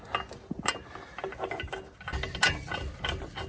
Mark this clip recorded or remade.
recorded